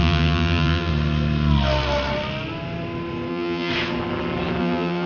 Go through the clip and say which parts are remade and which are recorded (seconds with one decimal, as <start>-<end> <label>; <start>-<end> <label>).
0.0-0.9 remade; 0.9-3.3 recorded; 3.3-3.7 remade; 3.7-4.6 recorded; 4.6-5.1 remade